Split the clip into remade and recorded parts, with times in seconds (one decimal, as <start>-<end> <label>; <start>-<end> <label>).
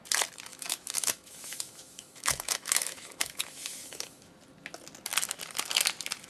0.0-0.5 recorded; 0.5-4.3 remade; 4.3-6.3 recorded